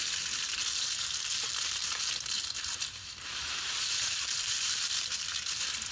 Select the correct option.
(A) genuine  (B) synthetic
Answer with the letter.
B